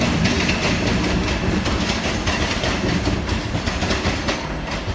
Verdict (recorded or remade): recorded